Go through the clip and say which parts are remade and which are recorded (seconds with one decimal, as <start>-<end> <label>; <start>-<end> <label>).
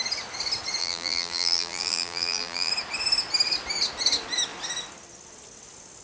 0.0-0.8 recorded; 0.8-2.7 remade; 2.7-6.0 recorded